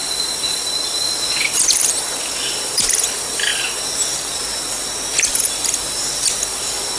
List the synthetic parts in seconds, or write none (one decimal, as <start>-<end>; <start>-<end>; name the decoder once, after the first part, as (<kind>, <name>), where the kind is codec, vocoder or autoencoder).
0.5-3.5 (vocoder, BigVGAN v2); 5.2-7.0